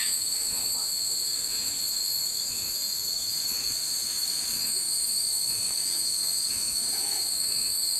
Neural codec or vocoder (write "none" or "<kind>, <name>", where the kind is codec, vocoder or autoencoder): autoencoder, DAC-VAE